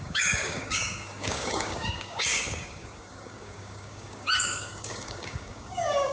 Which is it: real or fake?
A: fake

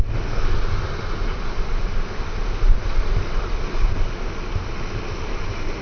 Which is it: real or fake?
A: real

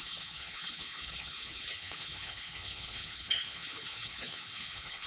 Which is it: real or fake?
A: fake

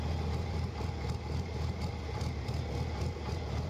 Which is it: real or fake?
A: real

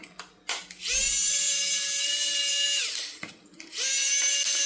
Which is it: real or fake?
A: real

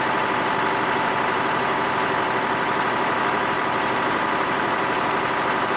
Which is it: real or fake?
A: fake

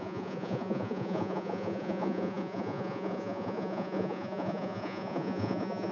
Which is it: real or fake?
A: fake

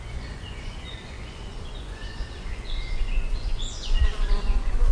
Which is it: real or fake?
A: fake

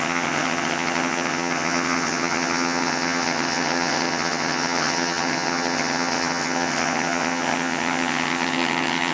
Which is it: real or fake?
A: fake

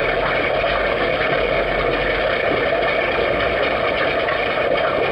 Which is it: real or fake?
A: real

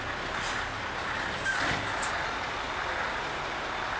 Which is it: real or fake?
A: real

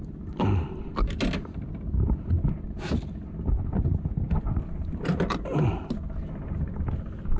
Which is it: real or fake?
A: real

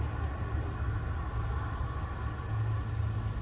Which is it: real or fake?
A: real